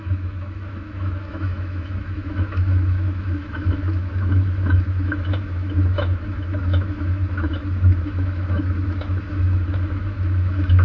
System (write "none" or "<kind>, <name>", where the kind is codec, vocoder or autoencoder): autoencoder, DAC-VAE